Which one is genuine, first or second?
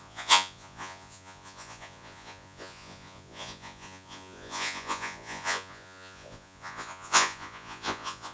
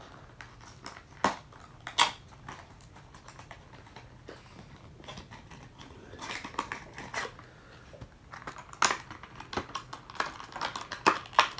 second